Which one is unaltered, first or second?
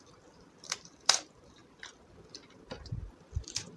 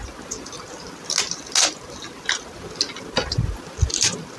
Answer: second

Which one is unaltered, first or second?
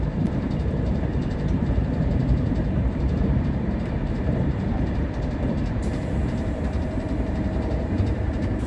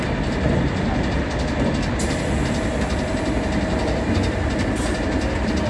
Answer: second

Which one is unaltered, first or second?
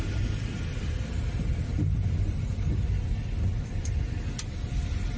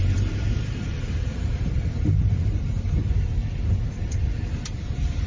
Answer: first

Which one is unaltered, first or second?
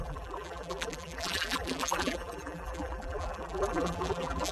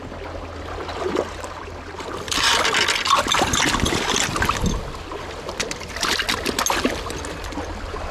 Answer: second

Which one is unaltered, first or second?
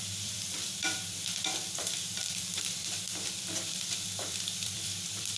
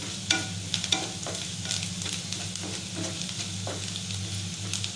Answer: second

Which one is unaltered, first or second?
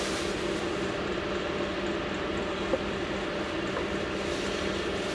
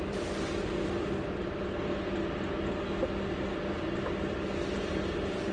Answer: second